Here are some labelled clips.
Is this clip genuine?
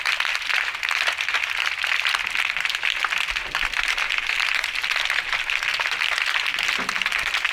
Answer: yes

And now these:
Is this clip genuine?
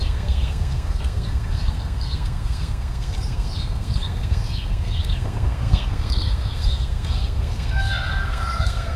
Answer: no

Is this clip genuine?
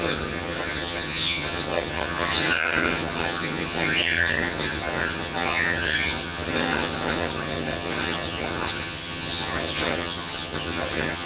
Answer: no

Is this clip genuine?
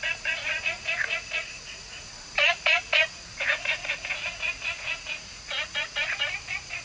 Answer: no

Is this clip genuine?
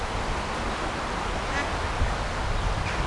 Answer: yes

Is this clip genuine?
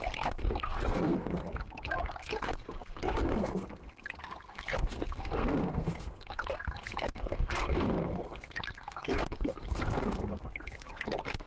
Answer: no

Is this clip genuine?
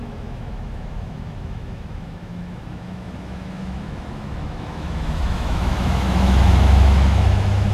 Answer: no